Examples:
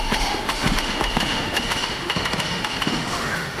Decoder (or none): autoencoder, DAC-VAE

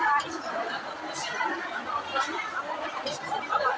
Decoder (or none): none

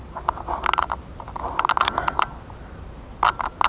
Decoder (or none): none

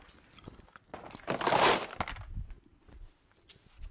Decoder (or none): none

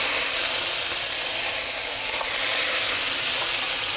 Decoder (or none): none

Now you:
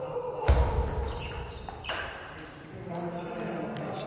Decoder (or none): none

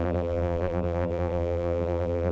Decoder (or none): vocoder, BigVGAN v2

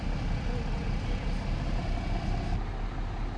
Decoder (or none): none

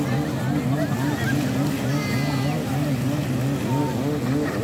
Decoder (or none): none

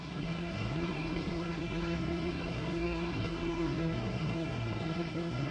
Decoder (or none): codec, SNAC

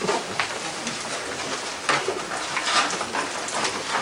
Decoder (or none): none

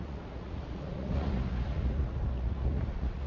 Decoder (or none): vocoder, Vocos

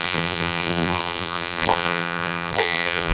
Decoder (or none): vocoder, BigVGAN v2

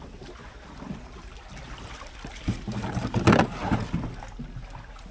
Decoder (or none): none